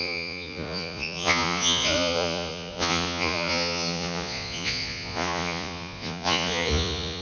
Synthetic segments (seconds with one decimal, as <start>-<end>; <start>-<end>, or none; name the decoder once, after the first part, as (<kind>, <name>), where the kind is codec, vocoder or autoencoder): 0.0-7.2 (vocoder, Vocos)